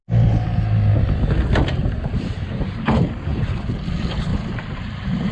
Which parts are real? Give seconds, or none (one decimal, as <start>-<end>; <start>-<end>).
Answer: 0.0-1.8; 2.8-3.3; 3.8-4.3